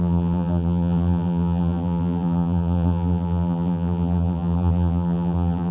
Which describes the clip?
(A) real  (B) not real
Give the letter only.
B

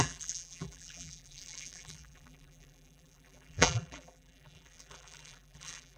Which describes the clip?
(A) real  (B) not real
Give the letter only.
B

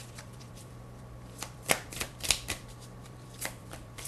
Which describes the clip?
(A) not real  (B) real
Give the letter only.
A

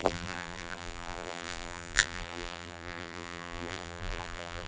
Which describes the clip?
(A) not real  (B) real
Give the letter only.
A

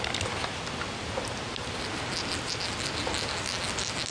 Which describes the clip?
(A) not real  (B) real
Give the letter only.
B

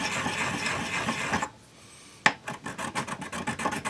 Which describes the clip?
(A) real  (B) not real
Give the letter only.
A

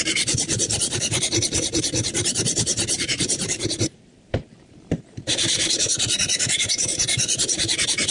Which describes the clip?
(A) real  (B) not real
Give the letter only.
B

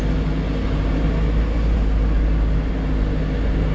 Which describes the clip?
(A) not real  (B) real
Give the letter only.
B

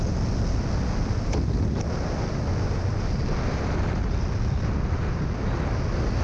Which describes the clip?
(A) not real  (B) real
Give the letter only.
B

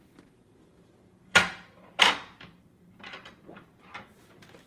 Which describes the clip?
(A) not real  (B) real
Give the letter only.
A